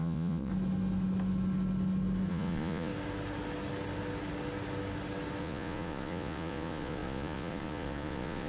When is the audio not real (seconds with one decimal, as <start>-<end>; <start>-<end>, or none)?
0.0-0.5; 2.3-2.9; 5.4-8.5